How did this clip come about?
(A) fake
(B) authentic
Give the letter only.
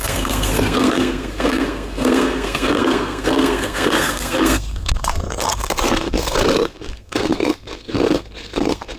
A